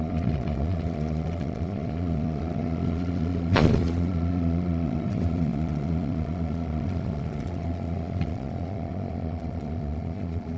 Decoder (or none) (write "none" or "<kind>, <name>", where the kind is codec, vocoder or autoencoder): vocoder, Vocos